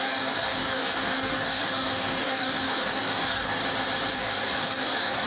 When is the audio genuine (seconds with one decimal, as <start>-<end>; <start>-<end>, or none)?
3.6-4.1